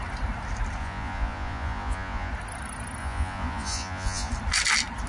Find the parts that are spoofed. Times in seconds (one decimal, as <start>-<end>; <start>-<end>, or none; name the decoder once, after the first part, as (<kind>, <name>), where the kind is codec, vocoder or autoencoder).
0.8-2.3 (vocoder, Vocos); 3.0-4.3